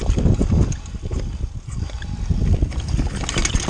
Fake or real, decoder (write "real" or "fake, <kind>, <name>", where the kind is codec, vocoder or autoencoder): real